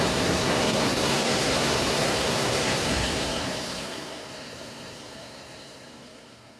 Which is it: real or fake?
fake